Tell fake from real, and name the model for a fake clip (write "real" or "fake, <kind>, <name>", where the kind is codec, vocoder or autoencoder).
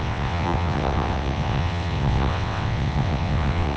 fake, vocoder, WaveNeXt